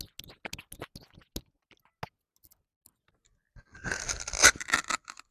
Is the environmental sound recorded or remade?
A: recorded